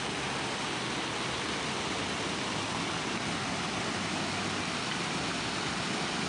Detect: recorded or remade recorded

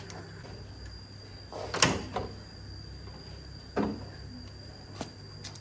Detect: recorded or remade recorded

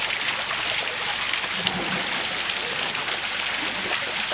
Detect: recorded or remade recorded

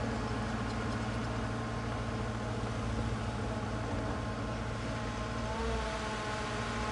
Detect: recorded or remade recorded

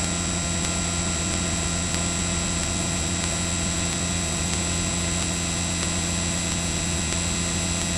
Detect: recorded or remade recorded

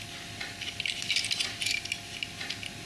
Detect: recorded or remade recorded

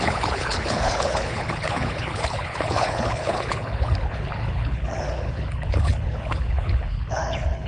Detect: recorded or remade remade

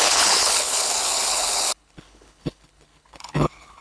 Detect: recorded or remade remade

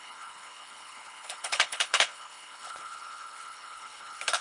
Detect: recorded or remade remade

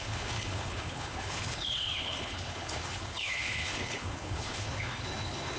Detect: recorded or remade remade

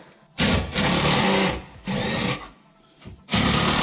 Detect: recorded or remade recorded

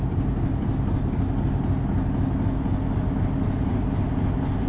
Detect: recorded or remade recorded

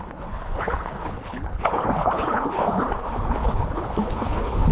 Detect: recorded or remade remade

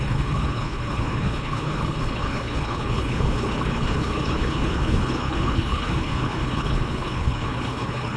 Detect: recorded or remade remade